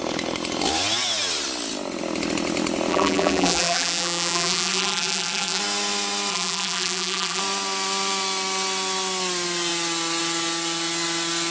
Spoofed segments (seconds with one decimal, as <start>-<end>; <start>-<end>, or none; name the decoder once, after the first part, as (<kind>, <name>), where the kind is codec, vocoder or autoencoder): 2.9-5.6 (vocoder, BigVGAN v2); 6.3-7.4